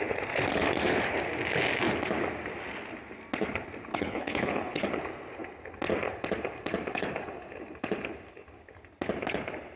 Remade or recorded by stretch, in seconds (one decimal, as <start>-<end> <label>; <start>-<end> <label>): 0.0-3.9 recorded; 3.9-4.9 remade; 4.9-9.8 recorded